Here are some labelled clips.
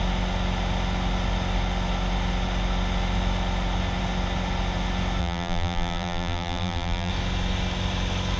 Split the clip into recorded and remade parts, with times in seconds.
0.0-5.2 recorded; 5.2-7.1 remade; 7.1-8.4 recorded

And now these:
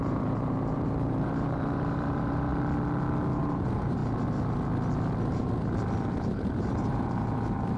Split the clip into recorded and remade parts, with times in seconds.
0.0-2.5 remade; 2.5-3.4 recorded; 3.4-4.0 remade; 4.0-6.1 recorded; 6.1-7.8 remade

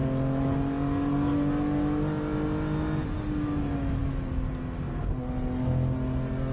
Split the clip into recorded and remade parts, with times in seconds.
0.0-6.5 recorded

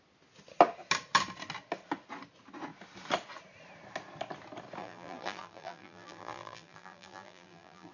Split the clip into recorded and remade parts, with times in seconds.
0.0-4.8 recorded; 4.8-7.9 remade